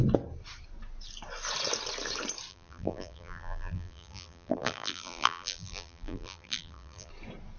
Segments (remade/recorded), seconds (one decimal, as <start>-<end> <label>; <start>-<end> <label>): 0.0-2.5 recorded; 2.5-7.1 remade; 7.1-7.6 recorded